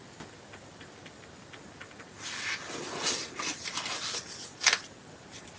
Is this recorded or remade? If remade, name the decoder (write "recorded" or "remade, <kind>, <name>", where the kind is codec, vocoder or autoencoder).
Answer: recorded